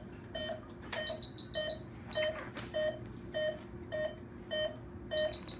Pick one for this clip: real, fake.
real